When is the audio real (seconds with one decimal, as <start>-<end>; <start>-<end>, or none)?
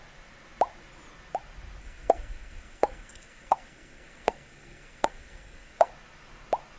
0.0-1.8; 5.9-6.8